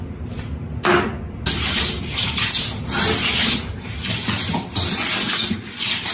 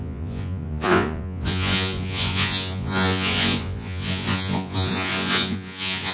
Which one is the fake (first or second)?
second